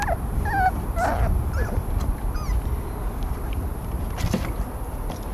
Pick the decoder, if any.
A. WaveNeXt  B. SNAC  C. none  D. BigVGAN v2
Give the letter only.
C